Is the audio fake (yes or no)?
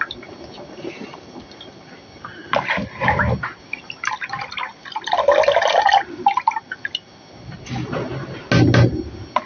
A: no